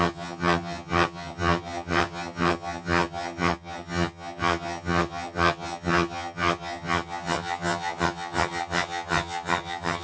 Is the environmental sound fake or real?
fake